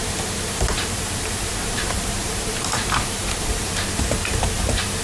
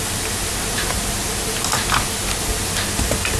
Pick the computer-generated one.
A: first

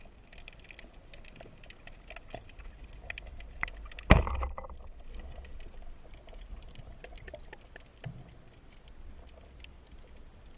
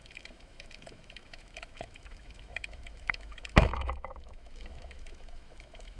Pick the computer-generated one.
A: second